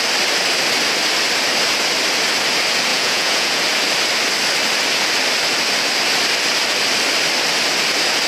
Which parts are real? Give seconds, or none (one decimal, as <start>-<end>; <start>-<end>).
0.0-2.9; 3.6-8.3